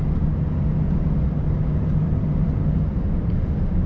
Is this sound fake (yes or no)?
no